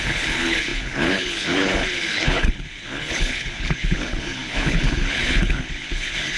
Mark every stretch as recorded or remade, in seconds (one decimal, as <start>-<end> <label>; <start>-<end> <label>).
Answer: 0.0-6.4 remade